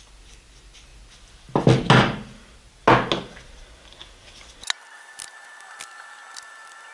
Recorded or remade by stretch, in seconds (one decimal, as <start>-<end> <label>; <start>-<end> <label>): 0.0-6.9 recorded